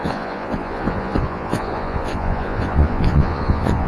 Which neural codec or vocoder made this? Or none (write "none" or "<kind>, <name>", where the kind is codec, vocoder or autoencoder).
vocoder, Vocos